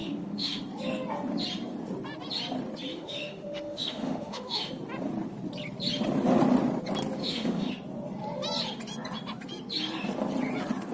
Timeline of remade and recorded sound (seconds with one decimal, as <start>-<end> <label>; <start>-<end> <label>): 0.0-0.6 remade; 0.6-2.9 recorded; 2.9-4.7 remade; 4.7-7.2 recorded; 7.2-7.7 remade; 7.7-10.9 recorded